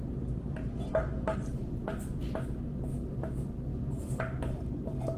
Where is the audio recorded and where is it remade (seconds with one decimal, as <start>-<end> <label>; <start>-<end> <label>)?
0.0-5.2 recorded